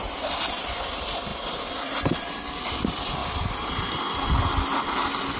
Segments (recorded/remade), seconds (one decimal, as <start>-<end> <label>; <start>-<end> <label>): 0.0-1.3 recorded; 1.3-2.7 remade; 2.7-5.4 recorded